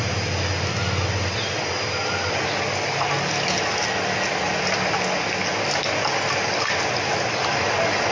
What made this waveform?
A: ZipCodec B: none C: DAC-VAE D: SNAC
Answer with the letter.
B